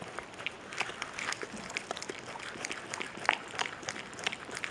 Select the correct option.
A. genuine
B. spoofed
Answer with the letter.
B